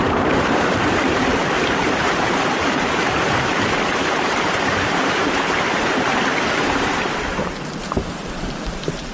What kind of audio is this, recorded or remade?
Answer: remade